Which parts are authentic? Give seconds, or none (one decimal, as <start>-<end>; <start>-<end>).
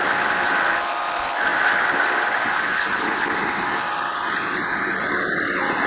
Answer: 0.0-5.9